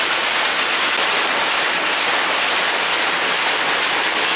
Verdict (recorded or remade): recorded